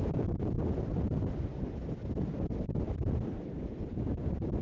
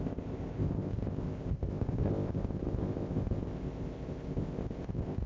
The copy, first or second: second